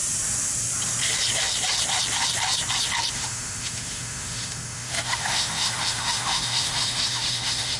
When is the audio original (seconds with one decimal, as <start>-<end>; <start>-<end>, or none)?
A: 0.0-3.1